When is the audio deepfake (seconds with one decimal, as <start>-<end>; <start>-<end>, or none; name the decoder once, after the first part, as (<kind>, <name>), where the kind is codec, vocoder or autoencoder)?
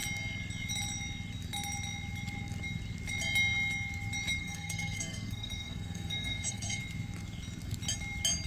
4.4-6.8 (codec, SNAC)